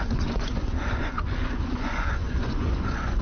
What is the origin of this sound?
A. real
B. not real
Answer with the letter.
B